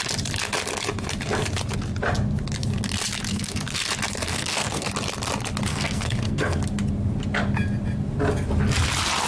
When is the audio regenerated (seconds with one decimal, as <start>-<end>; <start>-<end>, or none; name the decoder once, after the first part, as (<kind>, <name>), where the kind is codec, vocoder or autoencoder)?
3.3-3.8 (codec, SNAC); 4.3-4.9; 5.7-6.6